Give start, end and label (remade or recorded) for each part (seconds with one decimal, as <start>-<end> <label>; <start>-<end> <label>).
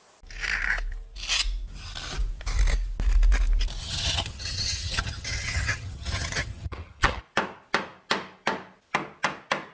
0.0-3.8 recorded; 3.8-7.2 remade; 7.2-9.7 recorded